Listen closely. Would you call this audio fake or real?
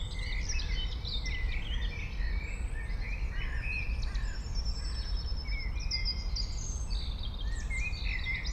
real